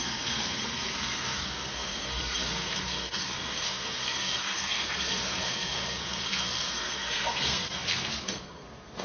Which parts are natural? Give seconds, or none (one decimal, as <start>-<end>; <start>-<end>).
none